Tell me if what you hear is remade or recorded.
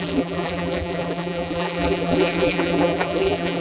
remade